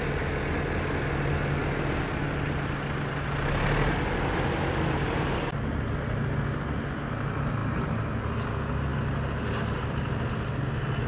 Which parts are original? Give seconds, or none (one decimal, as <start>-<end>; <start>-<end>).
0.0-11.1